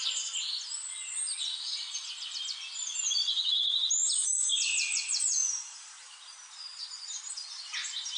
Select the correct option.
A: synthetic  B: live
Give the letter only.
B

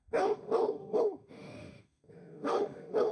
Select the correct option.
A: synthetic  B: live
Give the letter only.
A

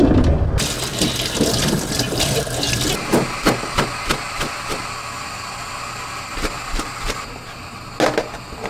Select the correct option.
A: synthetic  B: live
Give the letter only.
B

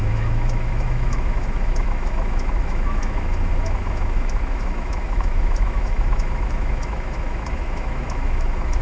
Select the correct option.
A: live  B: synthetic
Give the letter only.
B